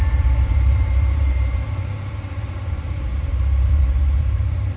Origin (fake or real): fake